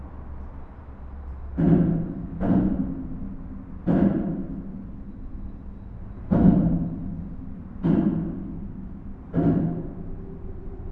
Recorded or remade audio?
recorded